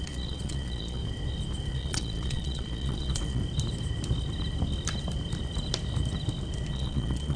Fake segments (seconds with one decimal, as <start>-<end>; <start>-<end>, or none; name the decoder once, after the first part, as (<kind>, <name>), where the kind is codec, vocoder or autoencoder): 0.0-1.0 (vocoder, Vocos); 1.7-3.4; 6.7-7.4